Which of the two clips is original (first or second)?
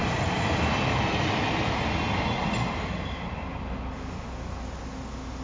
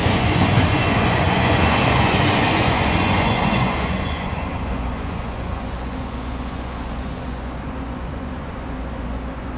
first